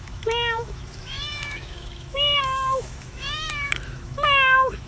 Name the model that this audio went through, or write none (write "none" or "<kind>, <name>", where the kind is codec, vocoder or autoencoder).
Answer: autoencoder, DAC-VAE